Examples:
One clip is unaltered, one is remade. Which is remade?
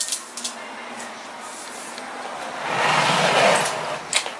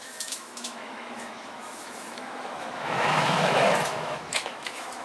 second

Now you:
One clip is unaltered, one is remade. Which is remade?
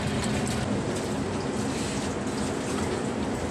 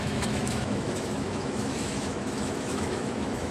second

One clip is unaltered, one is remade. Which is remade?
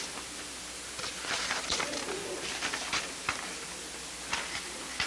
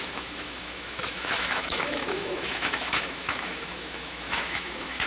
second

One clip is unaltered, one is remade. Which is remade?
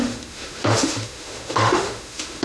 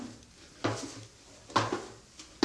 first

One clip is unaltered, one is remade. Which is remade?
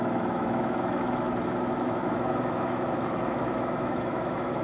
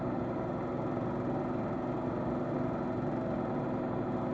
first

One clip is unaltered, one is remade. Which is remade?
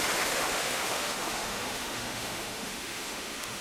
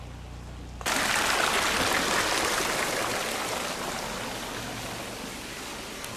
first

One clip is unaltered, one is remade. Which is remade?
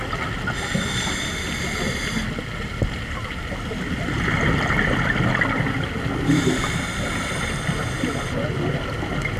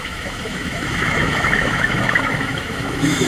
second